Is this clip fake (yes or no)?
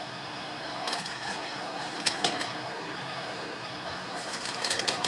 yes